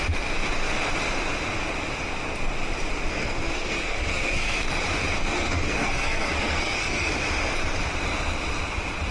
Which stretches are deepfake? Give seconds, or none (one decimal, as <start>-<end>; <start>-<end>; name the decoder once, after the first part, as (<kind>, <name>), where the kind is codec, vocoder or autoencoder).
3.1-4.6 (codec, SNAC); 5.2-7.1